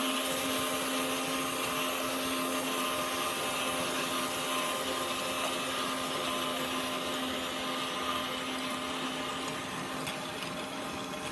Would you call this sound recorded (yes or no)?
yes